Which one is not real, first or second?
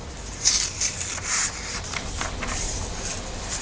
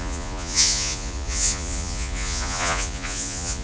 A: second